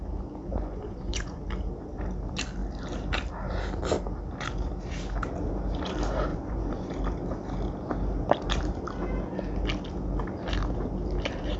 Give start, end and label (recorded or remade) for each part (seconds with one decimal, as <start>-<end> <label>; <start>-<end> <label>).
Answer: 0.0-0.4 recorded; 0.4-1.4 remade; 1.4-6.3 recorded; 6.3-6.9 remade; 6.9-11.6 recorded